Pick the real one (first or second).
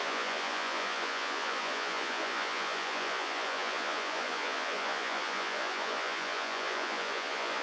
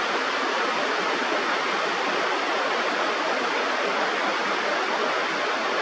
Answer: second